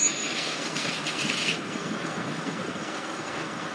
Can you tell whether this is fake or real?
fake